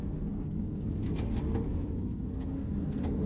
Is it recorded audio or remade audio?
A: remade